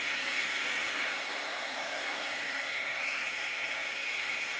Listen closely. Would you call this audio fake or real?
fake